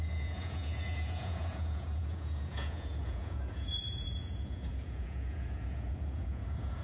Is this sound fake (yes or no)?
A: yes